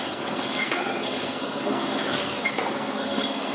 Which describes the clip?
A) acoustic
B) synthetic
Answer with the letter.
B